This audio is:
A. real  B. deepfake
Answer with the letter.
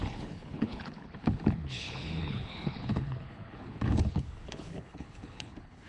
B